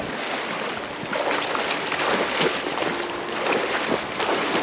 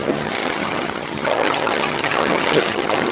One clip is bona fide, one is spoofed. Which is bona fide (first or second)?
first